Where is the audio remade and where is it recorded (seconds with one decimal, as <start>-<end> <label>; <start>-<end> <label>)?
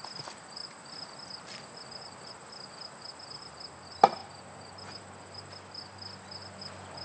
0.0-7.0 recorded